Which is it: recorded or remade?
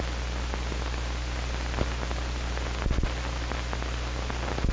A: recorded